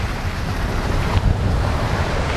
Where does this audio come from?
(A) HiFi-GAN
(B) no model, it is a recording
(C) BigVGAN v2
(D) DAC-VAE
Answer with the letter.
C